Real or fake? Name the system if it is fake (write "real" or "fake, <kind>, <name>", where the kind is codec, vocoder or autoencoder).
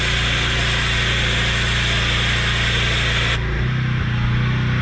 real